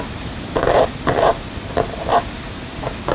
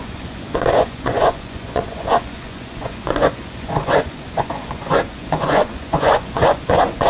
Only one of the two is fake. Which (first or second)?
second